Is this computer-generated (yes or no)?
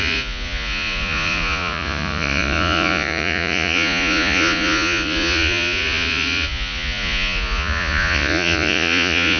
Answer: yes